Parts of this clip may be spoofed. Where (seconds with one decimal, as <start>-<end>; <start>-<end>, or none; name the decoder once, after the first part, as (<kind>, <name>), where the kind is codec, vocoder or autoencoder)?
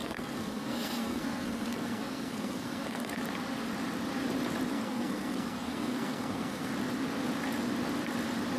0.0-3.2 (codec, SNAC); 4.7-6.7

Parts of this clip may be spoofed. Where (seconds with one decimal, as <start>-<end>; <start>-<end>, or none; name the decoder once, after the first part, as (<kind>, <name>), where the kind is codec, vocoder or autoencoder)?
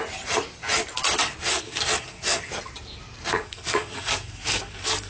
1.5-2.5 (codec, SNAC); 3.3-5.1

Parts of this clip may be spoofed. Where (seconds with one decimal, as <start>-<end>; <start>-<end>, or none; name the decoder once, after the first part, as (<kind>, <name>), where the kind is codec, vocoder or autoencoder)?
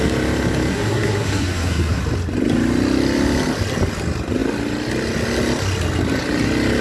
0.7-2.0 (codec, SNAC)